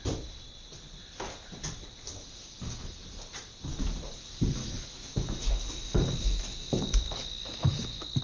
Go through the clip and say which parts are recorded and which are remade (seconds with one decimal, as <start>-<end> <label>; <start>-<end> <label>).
0.0-4.6 recorded; 4.6-8.2 remade